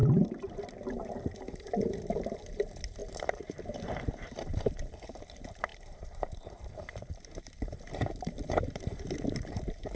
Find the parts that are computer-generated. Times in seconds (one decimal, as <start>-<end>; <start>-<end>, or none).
0.9-10.0